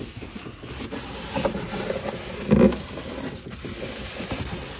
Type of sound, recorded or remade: recorded